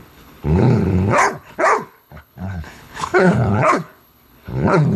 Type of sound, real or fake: fake